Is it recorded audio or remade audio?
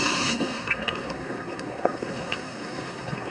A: remade